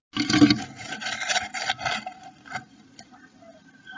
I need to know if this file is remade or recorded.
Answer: recorded